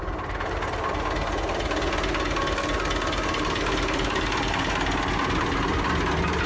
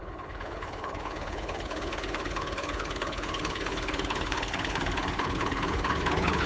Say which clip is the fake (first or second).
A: second